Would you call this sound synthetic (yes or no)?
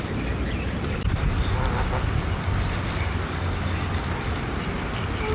no